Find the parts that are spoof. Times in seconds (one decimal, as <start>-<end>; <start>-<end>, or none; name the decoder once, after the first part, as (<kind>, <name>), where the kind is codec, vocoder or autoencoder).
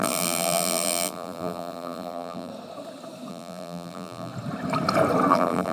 0.0-2.5 (vocoder, BigVGAN v2); 3.3-4.3; 5.3-5.7